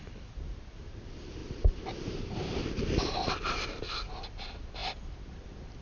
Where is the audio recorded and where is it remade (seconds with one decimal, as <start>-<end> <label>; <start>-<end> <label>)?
0.0-1.4 recorded; 1.4-3.8 remade; 3.8-5.8 recorded